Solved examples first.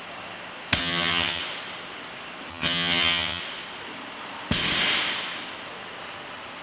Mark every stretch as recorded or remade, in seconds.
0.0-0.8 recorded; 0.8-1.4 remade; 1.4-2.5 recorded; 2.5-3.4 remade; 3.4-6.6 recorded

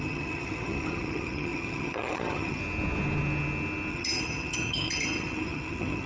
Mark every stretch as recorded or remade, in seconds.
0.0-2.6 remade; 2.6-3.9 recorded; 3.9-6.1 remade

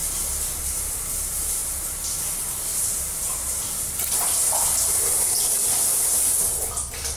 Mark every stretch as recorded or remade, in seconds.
0.0-0.6 recorded; 0.6-7.2 remade

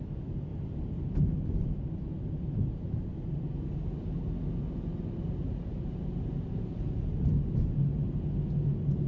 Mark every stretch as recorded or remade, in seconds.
0.0-5.4 recorded; 5.4-7.3 remade; 7.3-9.1 recorded